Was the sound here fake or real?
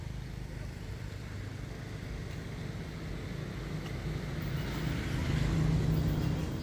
real